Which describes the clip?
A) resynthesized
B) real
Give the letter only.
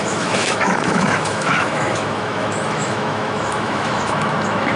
A